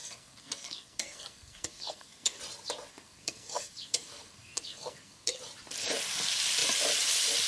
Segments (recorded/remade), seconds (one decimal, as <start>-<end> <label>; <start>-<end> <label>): 0.0-2.4 remade; 2.4-2.9 recorded; 2.9-5.4 remade; 5.4-7.5 recorded